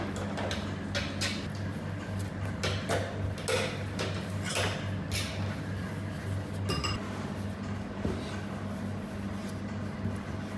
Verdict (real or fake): real